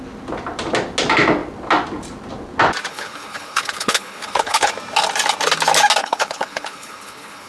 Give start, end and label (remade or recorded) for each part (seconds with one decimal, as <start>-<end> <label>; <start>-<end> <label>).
0.0-2.9 recorded; 2.9-4.7 remade; 4.7-6.0 recorded; 6.0-7.5 remade